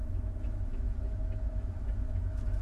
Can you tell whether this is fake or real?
fake